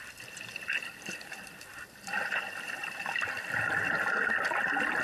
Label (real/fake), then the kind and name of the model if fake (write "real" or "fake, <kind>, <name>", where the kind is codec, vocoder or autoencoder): real